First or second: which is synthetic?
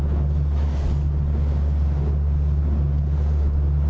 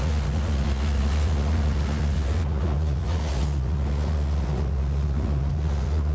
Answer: second